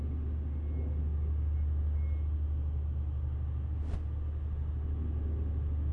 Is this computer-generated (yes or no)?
no